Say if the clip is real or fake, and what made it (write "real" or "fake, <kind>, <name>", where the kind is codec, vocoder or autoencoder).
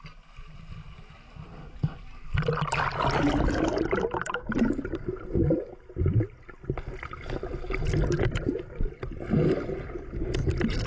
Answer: real